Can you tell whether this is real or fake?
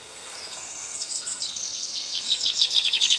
fake